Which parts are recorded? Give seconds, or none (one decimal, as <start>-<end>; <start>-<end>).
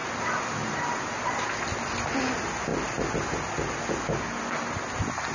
0.0-5.3